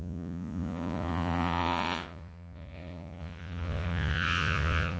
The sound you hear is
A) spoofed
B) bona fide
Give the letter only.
A